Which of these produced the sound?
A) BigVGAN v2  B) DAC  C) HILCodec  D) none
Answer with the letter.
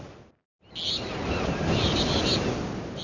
D